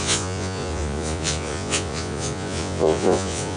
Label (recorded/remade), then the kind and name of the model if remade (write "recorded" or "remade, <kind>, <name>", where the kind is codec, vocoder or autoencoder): remade, vocoder, Vocos